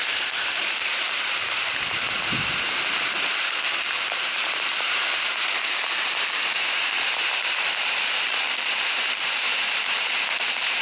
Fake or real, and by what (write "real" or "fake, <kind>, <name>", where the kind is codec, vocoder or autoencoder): fake, vocoder, BigVGAN v2